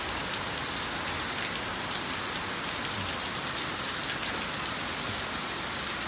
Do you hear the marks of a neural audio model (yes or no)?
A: no